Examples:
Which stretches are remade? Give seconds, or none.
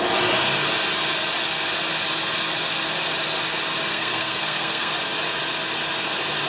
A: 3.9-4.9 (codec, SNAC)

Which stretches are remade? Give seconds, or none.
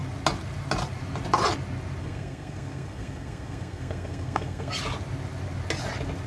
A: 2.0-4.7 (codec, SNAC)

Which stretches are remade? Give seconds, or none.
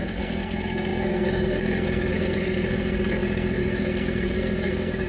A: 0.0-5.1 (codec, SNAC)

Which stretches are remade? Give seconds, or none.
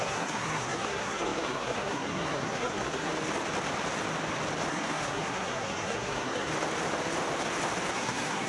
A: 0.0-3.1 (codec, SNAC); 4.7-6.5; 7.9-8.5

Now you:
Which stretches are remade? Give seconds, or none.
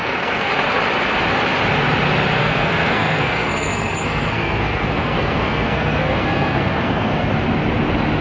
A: 0.0-0.5 (codec, SNAC); 2.4-7.3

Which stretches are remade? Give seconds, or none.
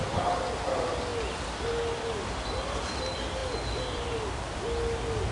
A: none